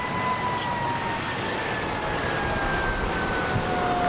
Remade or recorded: recorded